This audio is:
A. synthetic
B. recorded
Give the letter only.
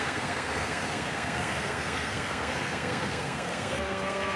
A